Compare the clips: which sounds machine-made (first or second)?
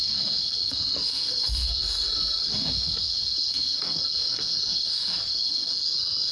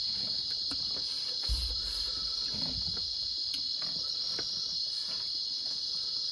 first